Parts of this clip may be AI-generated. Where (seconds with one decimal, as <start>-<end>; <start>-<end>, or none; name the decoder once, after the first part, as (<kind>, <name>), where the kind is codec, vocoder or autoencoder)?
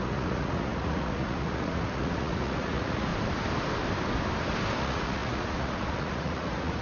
0.0-3.1 (vocoder, Vocos); 4.8-6.8